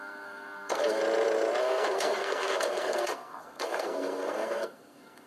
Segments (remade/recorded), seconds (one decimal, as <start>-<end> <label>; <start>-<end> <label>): 0.0-1.0 remade; 1.0-1.6 recorded; 1.6-5.3 remade